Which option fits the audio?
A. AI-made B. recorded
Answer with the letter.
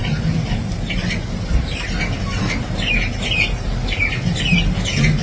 B